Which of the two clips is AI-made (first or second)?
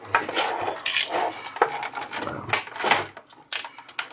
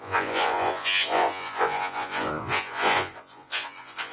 second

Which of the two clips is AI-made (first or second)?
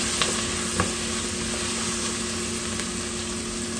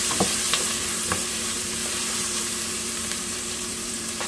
second